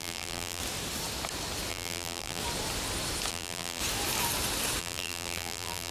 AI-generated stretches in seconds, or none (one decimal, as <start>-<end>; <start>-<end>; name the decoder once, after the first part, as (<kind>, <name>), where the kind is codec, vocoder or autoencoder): 0.0-0.6 (vocoder, BigVGAN v2); 1.7-2.4; 3.3-3.8; 4.8-5.9